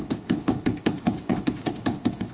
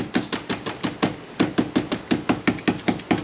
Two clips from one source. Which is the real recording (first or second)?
second